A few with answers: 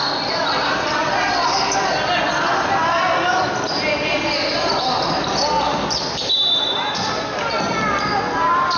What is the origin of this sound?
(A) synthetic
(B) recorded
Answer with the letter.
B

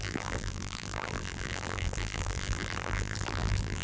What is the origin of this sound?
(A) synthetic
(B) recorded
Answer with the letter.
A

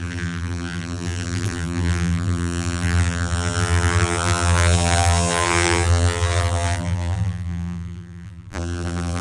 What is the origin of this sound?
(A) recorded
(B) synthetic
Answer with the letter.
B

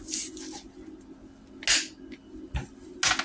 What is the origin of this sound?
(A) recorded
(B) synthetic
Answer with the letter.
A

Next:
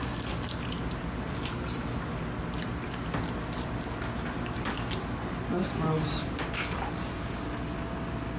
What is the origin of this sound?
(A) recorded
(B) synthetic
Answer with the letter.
A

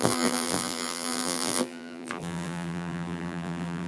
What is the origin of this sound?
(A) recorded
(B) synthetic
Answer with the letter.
B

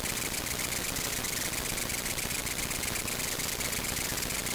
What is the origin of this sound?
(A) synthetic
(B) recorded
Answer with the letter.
B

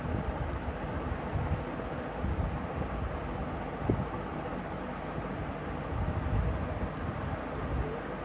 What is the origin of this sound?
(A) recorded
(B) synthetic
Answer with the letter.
A